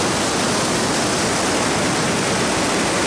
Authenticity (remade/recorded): recorded